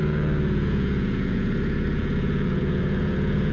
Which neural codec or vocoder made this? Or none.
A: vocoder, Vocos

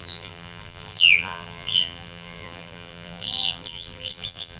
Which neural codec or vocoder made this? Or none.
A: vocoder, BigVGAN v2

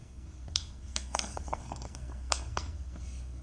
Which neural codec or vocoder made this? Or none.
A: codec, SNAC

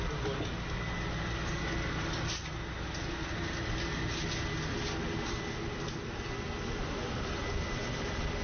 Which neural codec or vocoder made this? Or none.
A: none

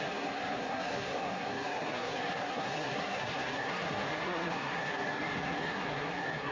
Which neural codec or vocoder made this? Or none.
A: codec, SNAC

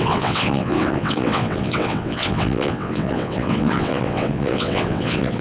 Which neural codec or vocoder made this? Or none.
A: vocoder, WaveNeXt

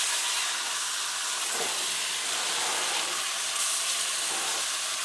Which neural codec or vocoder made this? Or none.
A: none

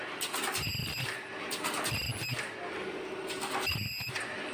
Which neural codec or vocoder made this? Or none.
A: none